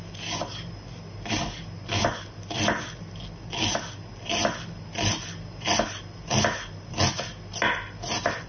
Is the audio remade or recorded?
recorded